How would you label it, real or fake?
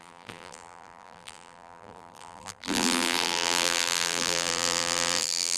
fake